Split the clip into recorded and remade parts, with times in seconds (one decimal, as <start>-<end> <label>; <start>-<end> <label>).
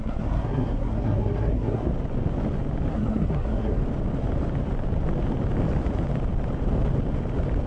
0.0-1.9 remade; 1.9-2.9 recorded; 2.9-3.8 remade; 3.8-7.7 recorded